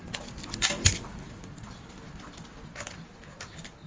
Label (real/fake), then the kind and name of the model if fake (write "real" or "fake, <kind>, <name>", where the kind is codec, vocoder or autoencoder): real